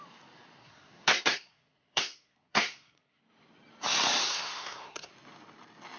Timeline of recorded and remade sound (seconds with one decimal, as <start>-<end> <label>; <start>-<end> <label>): 0.0-0.6 recorded; 0.6-3.2 remade; 3.2-4.2 recorded; 4.2-5.1 remade; 5.1-6.0 recorded